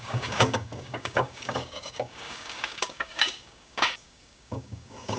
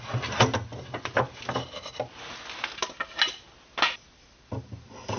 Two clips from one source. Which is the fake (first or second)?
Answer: first